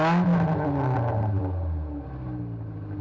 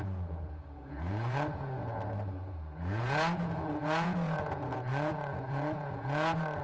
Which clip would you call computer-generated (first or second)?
second